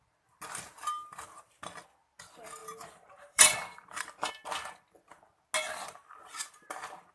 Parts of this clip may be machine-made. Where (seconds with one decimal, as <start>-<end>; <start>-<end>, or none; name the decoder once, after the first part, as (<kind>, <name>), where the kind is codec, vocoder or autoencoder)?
2.6-4.3 (vocoder, BigVGAN v2)